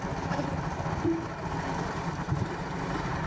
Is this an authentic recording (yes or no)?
yes